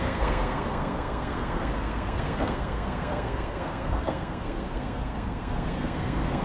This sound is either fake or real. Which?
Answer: fake